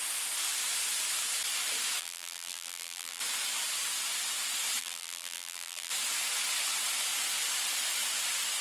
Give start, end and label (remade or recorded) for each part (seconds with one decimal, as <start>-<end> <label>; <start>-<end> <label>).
0.0-2.0 recorded; 2.0-3.2 remade; 3.2-4.8 recorded; 4.8-5.9 remade; 5.9-8.6 recorded